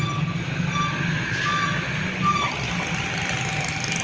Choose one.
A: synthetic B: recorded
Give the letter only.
B